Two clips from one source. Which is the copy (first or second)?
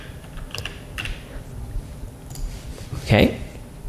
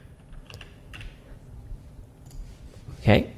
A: first